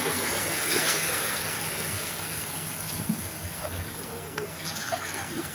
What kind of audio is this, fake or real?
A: fake